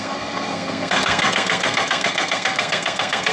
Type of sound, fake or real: fake